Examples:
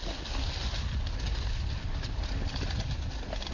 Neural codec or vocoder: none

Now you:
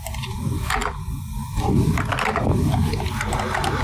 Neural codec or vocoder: none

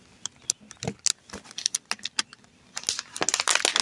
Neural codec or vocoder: none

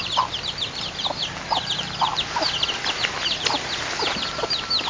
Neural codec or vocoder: none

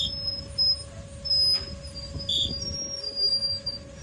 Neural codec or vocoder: none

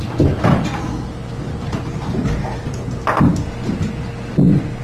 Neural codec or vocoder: none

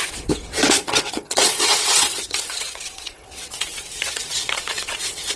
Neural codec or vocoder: vocoder, WaveNeXt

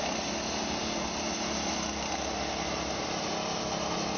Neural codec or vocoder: none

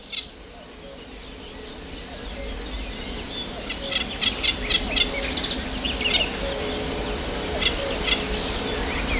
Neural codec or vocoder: none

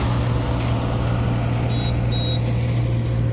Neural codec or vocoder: none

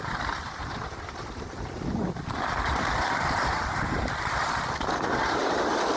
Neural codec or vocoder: vocoder, BigVGAN v2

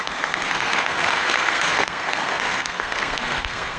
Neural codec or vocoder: codec, SNAC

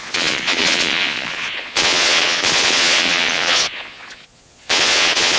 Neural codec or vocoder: vocoder, Vocos